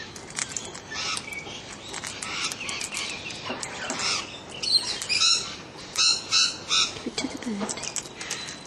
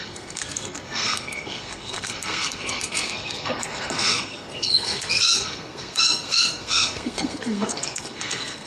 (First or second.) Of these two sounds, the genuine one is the first